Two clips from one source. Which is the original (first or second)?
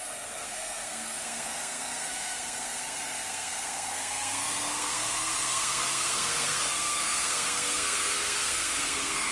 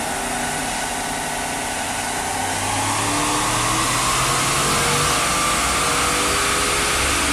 second